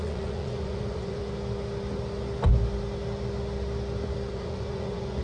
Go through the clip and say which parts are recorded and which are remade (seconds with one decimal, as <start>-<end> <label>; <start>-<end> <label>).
0.0-1.2 remade; 1.2-4.3 recorded; 4.3-5.2 remade